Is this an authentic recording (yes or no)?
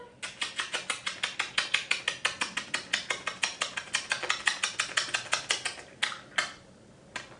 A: yes